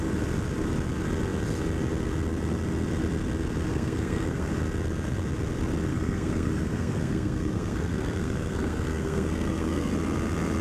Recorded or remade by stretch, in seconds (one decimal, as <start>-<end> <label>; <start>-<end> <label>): 0.0-3.7 recorded; 3.7-4.5 remade; 4.5-5.9 recorded; 5.9-9.9 remade; 9.9-10.6 recorded